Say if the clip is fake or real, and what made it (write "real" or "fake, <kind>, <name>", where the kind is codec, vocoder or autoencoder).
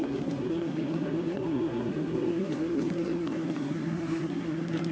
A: fake, codec, SNAC